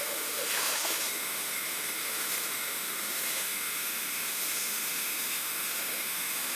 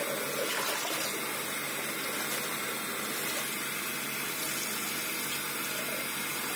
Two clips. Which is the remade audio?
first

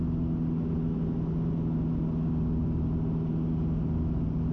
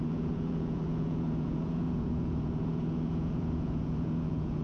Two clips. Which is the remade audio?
second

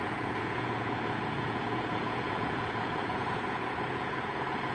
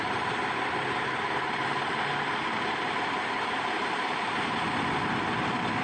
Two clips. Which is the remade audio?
first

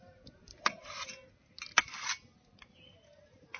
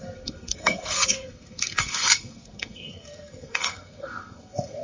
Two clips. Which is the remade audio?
second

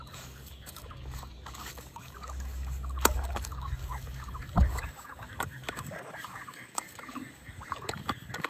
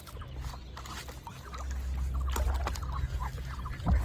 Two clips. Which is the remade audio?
first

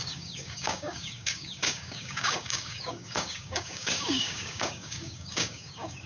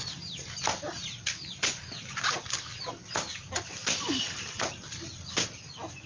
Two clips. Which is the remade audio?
first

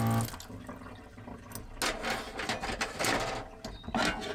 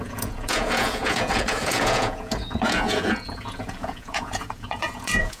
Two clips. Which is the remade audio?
second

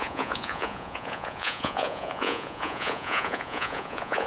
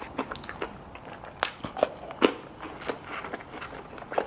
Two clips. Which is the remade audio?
first